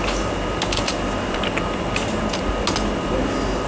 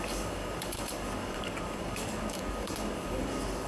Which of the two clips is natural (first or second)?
first